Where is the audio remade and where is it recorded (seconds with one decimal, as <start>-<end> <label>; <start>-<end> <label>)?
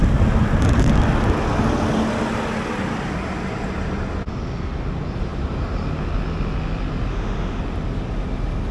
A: 0.0-7.1 recorded; 7.1-7.6 remade; 7.6-8.7 recorded